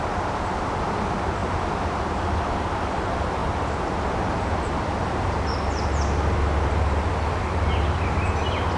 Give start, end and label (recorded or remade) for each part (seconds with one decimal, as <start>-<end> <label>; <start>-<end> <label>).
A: 0.0-1.4 recorded; 1.4-3.0 remade; 3.0-8.8 recorded